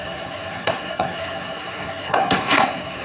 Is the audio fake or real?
fake